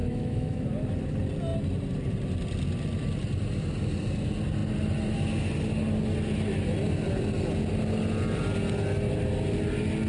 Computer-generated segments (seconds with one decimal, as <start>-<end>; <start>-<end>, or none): 0.0-0.6